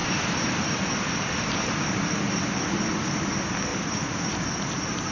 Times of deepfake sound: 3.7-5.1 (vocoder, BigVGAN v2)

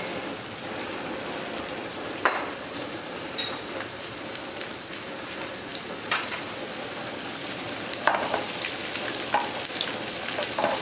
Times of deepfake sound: 1.9-4.7 (vocoder, BigVGAN v2); 5.7-6.8; 7.4-8.5

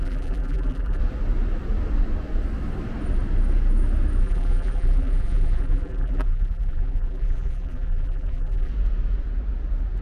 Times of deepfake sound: 0.0-1.0 (vocoder, BigVGAN v2); 4.2-8.7

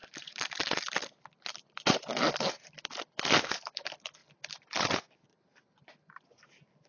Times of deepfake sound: none

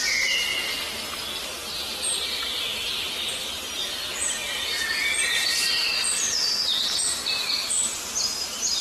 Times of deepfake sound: 0.0-0.5 (vocoder, BigVGAN v2); 2.2-8.8

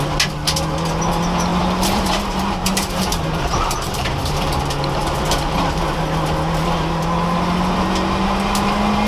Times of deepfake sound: 1.5-4.6 (vocoder, BigVGAN v2)